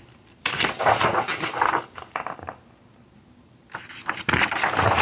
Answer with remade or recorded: recorded